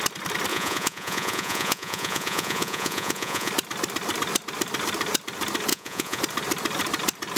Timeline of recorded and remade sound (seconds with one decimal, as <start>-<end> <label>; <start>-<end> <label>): 0.0-0.5 recorded; 0.5-3.5 remade; 3.5-5.7 recorded; 5.7-6.2 remade; 6.2-7.4 recorded